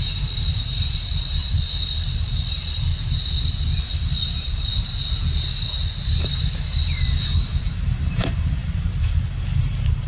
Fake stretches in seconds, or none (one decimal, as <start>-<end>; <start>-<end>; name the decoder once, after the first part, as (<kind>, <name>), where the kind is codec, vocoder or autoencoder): 0.0-2.9 (vocoder, BigVGAN v2); 3.8-4.7; 6.2-10.1